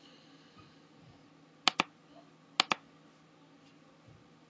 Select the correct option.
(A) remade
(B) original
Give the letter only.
B